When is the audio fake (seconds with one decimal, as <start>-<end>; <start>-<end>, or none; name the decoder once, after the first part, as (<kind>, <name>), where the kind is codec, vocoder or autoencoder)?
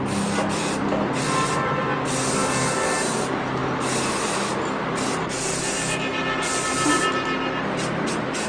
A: none